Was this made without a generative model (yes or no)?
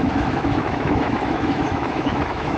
no